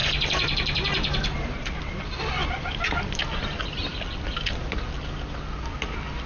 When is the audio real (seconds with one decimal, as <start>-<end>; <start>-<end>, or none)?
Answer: 1.8-2.4; 3.2-3.9; 4.7-6.3